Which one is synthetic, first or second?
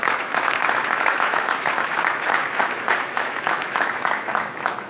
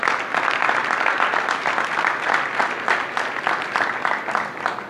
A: first